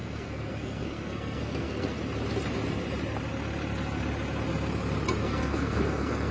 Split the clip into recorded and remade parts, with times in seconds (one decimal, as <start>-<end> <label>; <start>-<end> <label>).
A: 0.0-2.0 remade; 2.0-5.2 recorded; 5.2-6.3 remade